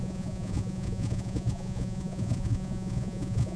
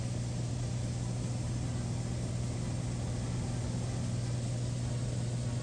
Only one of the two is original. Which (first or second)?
second